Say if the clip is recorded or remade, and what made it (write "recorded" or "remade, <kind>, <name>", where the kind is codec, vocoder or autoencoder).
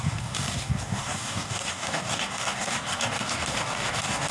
remade, codec, DAC